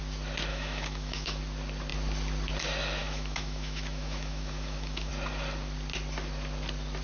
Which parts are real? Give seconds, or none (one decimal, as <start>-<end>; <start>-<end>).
0.0-0.5; 1.4-3.0; 5.1-7.0